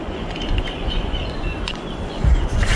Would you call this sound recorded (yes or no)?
no